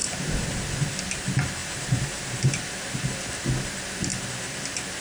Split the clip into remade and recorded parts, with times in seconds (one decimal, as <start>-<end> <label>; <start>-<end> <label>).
0.0-0.6 remade; 0.6-1.6 recorded; 1.6-2.6 remade; 2.6-5.0 recorded